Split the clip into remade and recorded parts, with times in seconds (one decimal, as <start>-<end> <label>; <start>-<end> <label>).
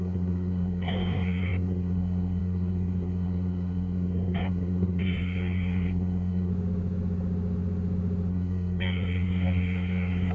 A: 0.0-6.5 remade; 6.5-8.3 recorded; 8.3-10.3 remade